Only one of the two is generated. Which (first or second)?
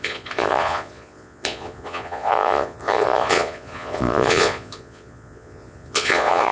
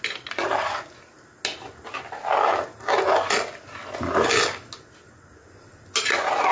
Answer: first